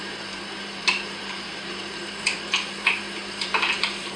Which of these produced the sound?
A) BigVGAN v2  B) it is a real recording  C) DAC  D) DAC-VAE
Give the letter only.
A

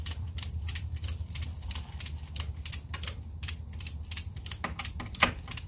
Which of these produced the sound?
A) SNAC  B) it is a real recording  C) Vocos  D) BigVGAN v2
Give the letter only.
B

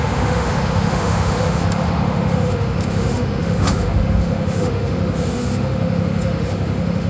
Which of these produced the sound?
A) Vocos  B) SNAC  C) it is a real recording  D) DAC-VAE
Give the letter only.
D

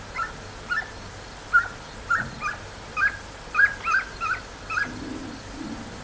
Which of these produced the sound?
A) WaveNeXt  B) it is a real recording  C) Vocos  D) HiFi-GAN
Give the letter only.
B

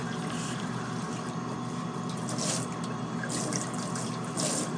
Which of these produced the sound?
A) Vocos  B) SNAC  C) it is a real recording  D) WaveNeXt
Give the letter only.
C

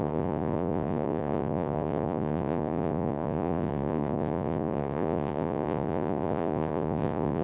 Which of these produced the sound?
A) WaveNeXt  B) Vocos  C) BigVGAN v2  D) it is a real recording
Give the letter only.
B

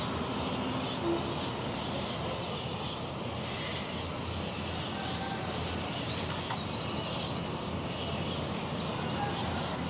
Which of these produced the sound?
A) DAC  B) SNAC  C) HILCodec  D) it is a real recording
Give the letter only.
D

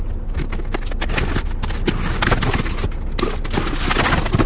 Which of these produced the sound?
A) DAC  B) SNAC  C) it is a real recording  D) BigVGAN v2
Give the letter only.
C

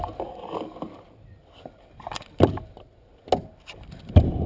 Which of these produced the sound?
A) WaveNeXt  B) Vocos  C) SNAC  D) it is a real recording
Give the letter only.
D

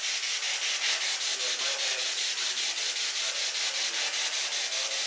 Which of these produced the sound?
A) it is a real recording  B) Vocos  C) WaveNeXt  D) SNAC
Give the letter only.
A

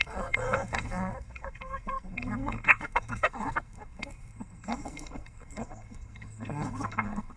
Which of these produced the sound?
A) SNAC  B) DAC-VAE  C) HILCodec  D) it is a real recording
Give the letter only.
A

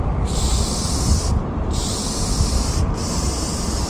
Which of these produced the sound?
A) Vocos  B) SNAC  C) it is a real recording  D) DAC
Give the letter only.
C